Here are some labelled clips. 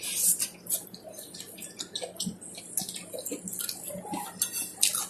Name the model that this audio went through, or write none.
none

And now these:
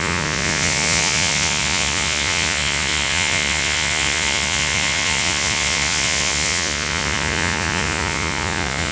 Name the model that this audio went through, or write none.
vocoder, Vocos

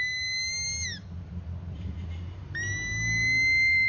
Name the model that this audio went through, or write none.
none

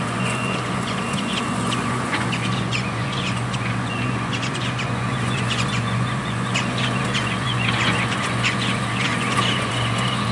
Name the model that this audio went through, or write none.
vocoder, Vocos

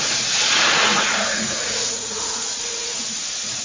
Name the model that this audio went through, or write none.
vocoder, Vocos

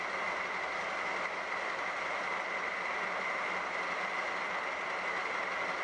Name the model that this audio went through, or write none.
none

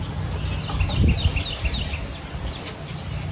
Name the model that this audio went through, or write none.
none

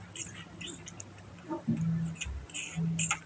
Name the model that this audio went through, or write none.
none